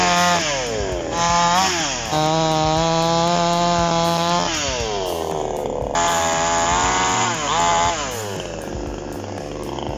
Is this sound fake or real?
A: real